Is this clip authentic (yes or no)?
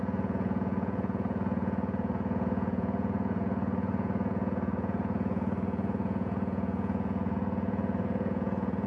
no